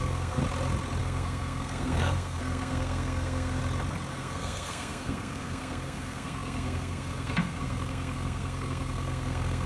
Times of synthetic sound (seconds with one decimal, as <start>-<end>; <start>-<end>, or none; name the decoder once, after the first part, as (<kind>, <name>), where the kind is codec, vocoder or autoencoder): 0.0-0.4 (codec, SNAC); 1.0-3.6; 4.1-9.7

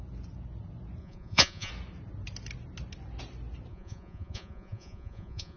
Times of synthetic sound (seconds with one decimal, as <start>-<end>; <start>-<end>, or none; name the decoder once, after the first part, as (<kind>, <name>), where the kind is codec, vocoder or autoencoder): 1.0-1.7 (vocoder, Vocos); 3.7-5.6